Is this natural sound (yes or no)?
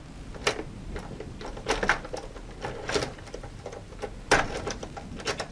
yes